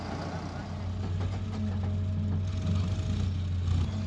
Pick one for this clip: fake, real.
real